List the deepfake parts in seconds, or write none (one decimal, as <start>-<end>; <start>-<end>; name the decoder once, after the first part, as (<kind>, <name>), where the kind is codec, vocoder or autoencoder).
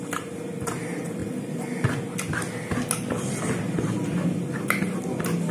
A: none